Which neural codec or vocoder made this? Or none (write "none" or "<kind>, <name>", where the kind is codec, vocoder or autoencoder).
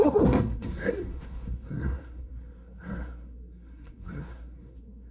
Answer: codec, SNAC